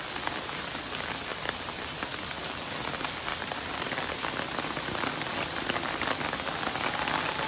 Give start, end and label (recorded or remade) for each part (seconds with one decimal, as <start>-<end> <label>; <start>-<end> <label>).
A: 0.0-1.3 recorded; 1.3-1.8 remade; 1.8-3.3 recorded; 3.3-4.0 remade; 4.0-7.5 recorded